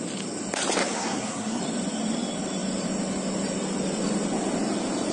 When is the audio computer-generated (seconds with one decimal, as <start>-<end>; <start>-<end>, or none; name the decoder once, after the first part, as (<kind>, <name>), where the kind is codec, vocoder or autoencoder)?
0.8-1.6 (codec, SNAC)